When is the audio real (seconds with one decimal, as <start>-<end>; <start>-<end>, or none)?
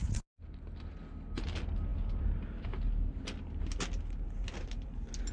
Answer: 0.0-5.3